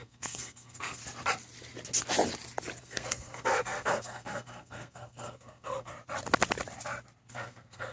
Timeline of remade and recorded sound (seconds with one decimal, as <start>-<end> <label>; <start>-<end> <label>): 0.0-1.0 remade; 1.0-2.8 recorded; 2.8-5.9 remade; 5.9-7.3 recorded; 7.3-7.9 remade